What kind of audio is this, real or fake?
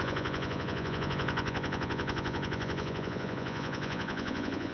fake